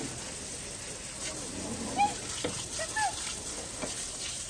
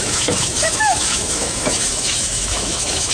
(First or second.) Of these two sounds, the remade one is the second